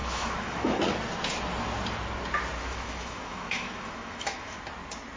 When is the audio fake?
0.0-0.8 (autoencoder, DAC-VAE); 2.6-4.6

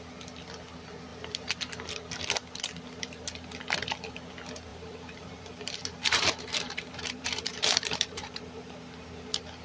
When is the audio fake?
1.1-1.9 (vocoder, BigVGAN v2); 4.7-8.4

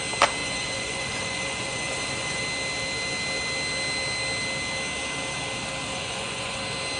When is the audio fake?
0.4-2.4 (vocoder, Vocos); 5.9-6.6

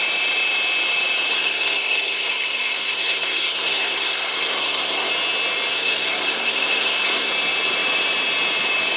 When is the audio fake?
1.3-5.1 (codec, SNAC); 5.8-7.3

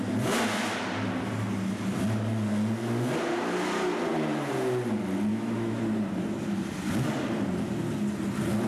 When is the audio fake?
5.3-5.8 (autoencoder, DAC-VAE)

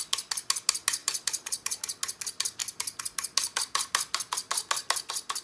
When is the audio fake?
1.0-1.8 (vocoder, BigVGAN v2)

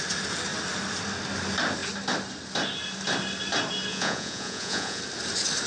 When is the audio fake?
3.9-5.0 (vocoder, Vocos)

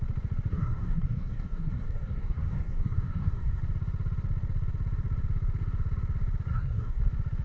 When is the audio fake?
0.5-3.6 (codec, SNAC); 6.5-7.0